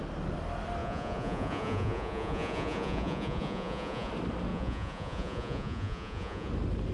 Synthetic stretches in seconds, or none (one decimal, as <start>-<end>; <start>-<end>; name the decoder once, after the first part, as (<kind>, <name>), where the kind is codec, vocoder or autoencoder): 0.8-4.1 (vocoder, Vocos); 4.5-6.5